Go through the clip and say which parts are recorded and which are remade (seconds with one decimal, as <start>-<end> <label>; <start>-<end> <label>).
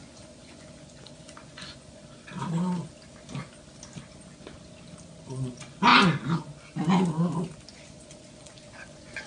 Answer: 0.0-2.0 remade; 2.0-5.2 recorded; 5.2-5.9 remade; 5.9-7.7 recorded; 7.7-9.3 remade